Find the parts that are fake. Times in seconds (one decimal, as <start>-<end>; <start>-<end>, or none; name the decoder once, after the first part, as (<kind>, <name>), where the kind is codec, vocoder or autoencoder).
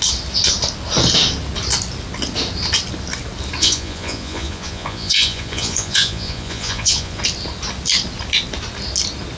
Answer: 3.6-7.2 (vocoder, Vocos)